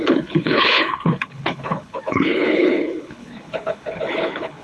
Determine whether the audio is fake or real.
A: fake